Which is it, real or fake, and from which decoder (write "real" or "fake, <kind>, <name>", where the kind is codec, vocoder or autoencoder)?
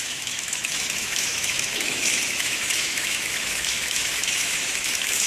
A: fake, autoencoder, DAC-VAE